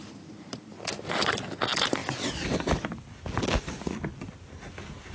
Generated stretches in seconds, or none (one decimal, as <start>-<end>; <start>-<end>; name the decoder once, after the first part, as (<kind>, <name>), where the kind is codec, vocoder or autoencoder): none